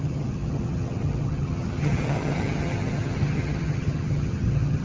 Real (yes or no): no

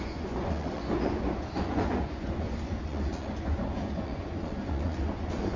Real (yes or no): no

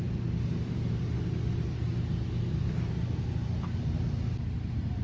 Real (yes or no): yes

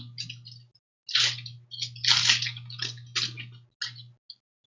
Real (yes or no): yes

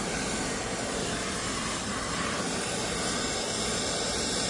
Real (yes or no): yes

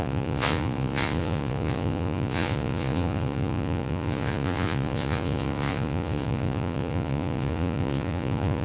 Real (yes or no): no